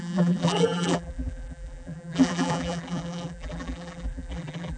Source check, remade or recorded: remade